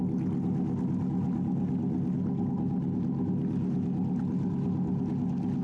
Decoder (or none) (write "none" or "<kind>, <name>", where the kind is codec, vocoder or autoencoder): none